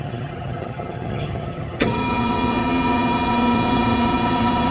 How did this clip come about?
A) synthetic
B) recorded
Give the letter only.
A